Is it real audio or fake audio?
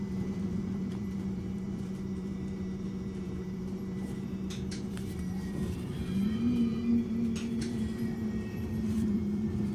fake